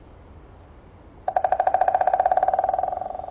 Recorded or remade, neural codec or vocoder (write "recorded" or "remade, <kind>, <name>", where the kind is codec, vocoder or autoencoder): recorded